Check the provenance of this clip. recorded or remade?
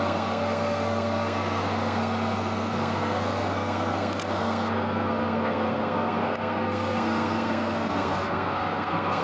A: remade